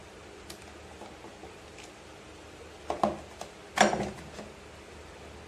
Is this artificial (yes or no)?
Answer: no